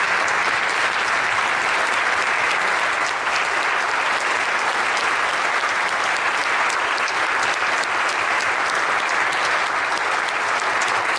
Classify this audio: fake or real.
real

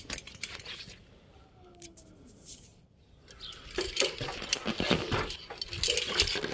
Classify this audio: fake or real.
real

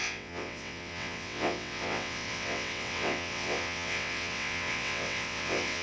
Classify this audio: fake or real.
fake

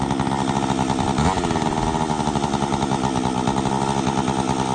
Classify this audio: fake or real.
real